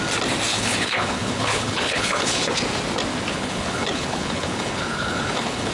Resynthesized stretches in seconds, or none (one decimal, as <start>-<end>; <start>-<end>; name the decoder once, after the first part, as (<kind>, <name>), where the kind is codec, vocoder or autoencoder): 0.5-2.5 (codec, HILCodec); 3.3-5.7